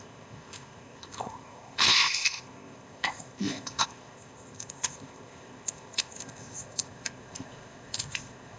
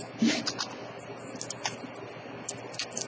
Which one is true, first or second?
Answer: second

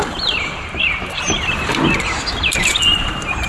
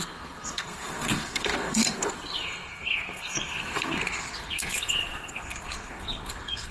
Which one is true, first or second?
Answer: first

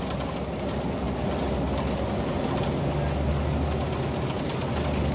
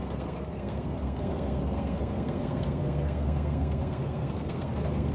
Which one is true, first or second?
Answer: first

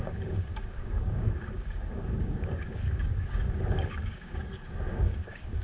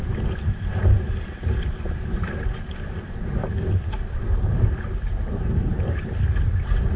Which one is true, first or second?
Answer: second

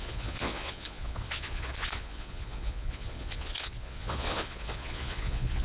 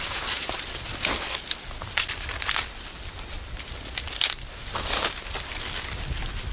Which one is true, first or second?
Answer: second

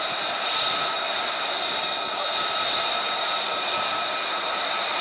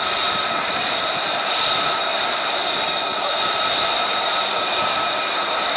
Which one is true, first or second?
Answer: first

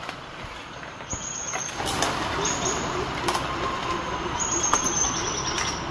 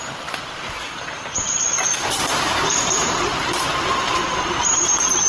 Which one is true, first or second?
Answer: first